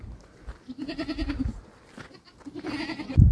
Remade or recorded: recorded